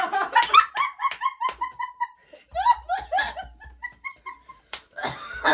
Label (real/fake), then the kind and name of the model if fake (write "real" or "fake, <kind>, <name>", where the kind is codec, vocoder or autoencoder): fake, vocoder, BigVGAN v2